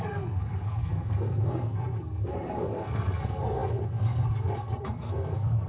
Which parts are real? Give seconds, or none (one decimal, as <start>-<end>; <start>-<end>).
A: none